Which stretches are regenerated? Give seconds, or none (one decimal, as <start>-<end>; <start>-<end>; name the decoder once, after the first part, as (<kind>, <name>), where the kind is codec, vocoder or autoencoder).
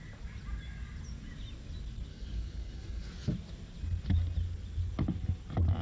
2.1-3.1 (codec, DAC)